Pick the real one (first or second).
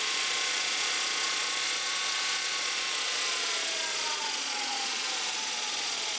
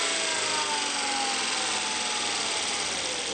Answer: second